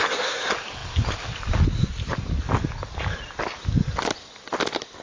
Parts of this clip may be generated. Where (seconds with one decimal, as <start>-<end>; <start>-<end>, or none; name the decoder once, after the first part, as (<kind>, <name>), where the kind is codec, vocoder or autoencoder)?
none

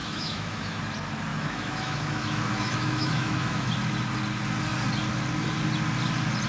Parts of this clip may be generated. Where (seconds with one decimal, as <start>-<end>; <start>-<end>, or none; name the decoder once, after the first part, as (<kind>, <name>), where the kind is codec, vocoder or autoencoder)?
0.0-0.8 (autoencoder, DAC-VAE); 1.3-3.7

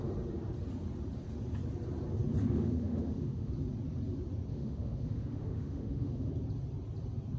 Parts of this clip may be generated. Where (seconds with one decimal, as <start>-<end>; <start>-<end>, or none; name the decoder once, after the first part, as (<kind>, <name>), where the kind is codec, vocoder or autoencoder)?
2.4-3.5 (autoencoder, DAC-VAE); 4.5-6.3

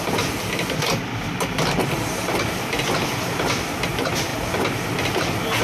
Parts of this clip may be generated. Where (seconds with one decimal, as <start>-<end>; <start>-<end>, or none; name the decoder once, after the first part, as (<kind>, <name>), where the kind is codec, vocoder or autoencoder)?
none